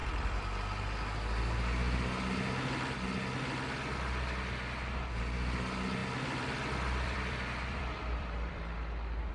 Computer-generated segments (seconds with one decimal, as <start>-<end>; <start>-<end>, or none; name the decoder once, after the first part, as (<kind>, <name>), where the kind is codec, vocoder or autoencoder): 6.0-9.3 (vocoder, BigVGAN v2)